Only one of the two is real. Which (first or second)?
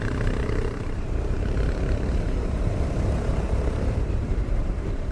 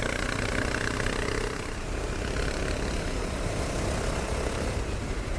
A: second